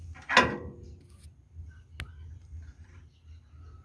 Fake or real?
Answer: real